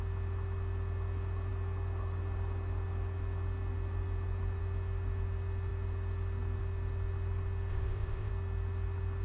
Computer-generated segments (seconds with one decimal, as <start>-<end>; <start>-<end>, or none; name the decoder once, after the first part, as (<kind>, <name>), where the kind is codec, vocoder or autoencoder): 7.7-8.3 (codec, ZipCodec)